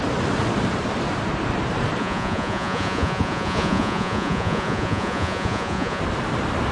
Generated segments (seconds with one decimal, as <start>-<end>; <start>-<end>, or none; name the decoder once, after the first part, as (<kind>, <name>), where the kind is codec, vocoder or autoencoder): 2.0-6.0 (vocoder, Vocos)